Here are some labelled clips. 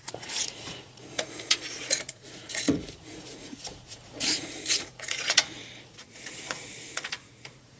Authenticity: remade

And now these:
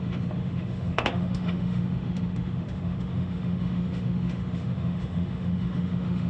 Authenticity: remade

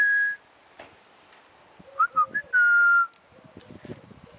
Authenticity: recorded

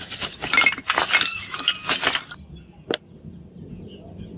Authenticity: recorded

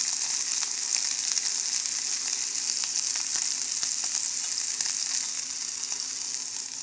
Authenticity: recorded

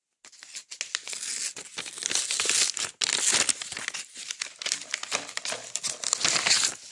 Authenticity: recorded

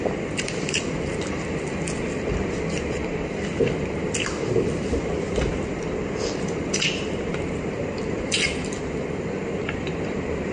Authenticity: remade